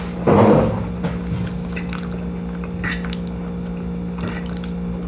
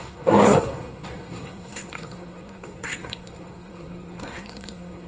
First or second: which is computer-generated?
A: second